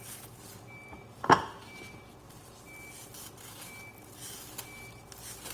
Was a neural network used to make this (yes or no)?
no